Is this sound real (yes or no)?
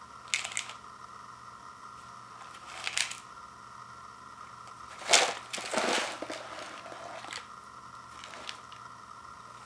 yes